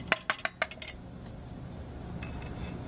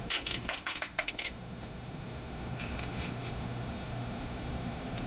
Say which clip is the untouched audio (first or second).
first